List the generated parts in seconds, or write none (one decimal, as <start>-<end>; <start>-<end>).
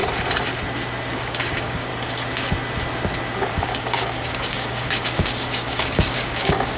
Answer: 1.2-1.9; 3.5-6.8